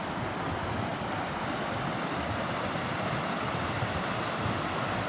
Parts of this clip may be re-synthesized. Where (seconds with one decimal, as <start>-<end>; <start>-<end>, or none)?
0.9-4.0